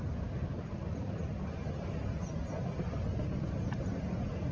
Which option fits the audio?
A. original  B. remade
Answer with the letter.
A